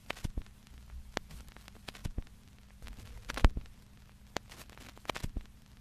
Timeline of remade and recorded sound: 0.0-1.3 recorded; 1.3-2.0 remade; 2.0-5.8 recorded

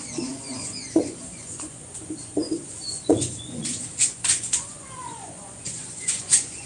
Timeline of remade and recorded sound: 0.0-6.7 remade

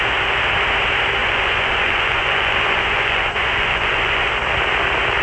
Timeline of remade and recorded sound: 0.0-1.2 recorded; 1.2-4.3 remade; 4.3-5.2 recorded

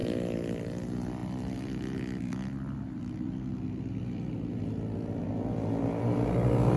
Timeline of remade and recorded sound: 0.0-0.6 remade; 0.6-1.2 recorded; 1.2-4.6 remade; 4.6-6.8 recorded

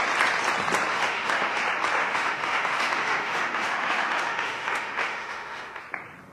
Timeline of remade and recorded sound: 0.0-0.9 recorded; 0.9-1.6 remade; 1.6-2.0 recorded; 2.0-5.8 remade; 5.8-6.3 recorded

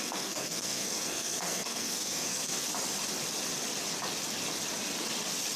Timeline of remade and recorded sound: 0.0-2.6 remade; 2.6-5.6 recorded